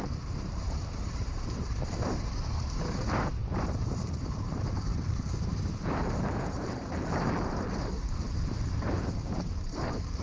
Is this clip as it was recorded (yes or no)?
no